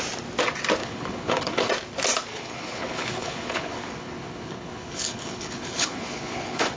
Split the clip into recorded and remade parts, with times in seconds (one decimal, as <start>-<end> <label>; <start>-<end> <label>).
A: 0.0-0.8 recorded; 0.8-1.7 remade; 1.7-2.3 recorded; 2.3-6.8 remade